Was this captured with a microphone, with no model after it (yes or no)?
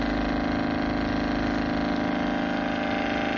yes